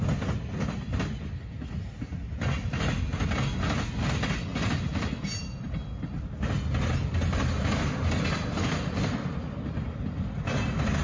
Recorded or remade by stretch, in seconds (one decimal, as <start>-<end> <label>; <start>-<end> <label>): 0.0-11.0 recorded